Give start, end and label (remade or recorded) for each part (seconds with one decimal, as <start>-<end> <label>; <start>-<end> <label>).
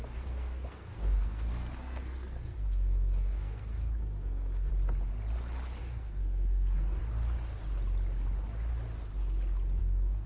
0.0-4.7 remade; 4.7-5.8 recorded; 5.8-7.0 remade; 7.0-9.8 recorded; 9.8-10.3 remade